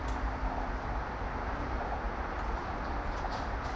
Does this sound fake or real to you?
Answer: real